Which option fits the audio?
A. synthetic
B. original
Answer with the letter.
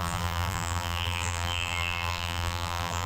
A